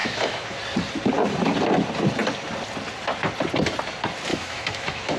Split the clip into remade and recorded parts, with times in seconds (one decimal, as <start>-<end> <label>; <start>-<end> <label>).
0.0-0.6 remade; 0.6-4.3 recorded; 4.3-5.2 remade